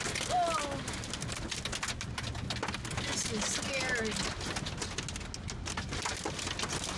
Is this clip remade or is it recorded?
recorded